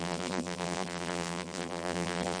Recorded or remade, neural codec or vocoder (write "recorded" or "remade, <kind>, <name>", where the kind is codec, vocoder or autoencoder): remade, vocoder, BigVGAN v2